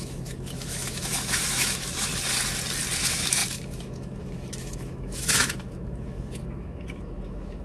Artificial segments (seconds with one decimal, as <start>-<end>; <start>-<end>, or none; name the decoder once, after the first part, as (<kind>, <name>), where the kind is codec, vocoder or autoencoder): 0.0-2.1 (autoencoder, DAC-VAE); 3.0-7.6